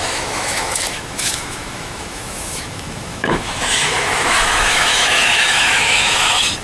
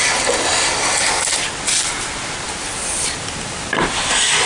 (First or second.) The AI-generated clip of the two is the first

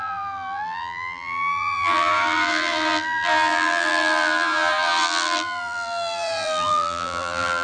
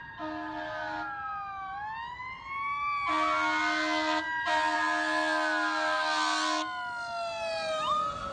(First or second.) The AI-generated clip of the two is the first